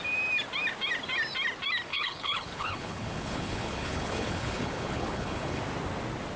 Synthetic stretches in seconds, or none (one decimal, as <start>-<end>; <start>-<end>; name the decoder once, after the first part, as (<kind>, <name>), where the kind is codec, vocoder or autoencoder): 1.9-5.6 (codec, HILCodec)